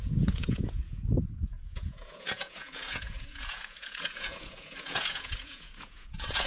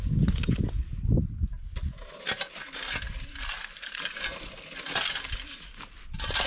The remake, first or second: first